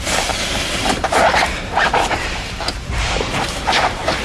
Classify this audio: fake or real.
fake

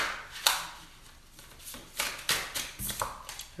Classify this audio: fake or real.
real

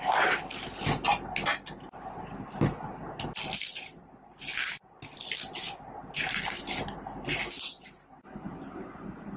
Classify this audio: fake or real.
real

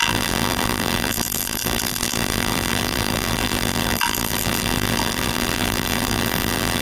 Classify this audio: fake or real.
fake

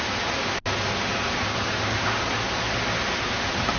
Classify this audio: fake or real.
real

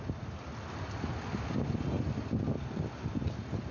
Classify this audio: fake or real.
real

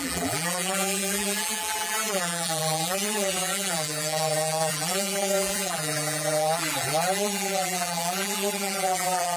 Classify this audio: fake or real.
fake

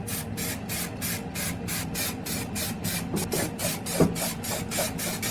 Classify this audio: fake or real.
real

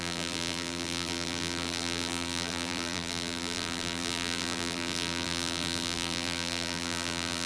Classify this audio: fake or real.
fake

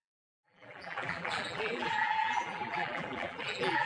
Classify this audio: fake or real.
fake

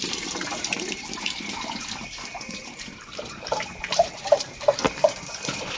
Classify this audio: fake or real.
fake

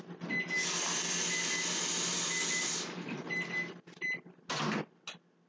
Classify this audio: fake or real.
real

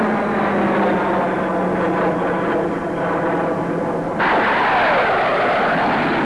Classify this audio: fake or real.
real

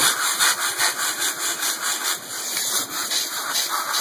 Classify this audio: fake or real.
real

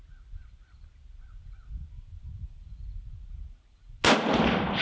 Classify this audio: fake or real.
real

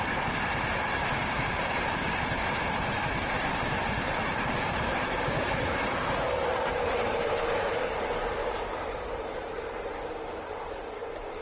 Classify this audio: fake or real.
fake